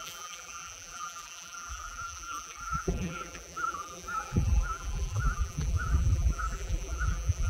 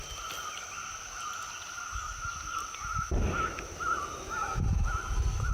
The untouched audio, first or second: second